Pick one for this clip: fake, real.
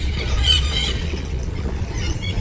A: fake